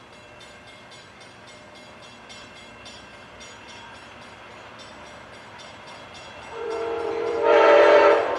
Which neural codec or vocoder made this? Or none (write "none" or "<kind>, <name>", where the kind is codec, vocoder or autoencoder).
vocoder, BigVGAN v2